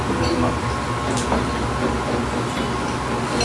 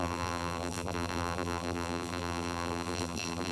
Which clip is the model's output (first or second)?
second